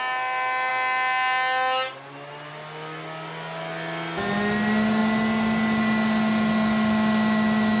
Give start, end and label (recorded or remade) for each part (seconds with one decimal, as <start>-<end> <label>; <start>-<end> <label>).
0.0-7.8 recorded